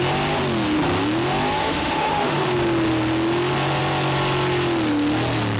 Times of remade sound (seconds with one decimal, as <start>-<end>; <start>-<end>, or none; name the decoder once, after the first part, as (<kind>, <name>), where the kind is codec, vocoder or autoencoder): 1.6-2.5 (autoencoder, DAC-VAE)